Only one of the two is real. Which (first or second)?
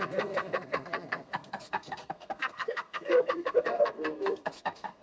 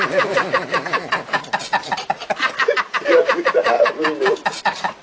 second